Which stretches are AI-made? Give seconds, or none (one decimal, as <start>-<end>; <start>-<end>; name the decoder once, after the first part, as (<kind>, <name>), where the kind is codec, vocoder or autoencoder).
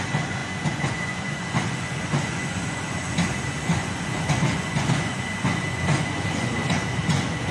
0.0-7.5 (vocoder, Vocos)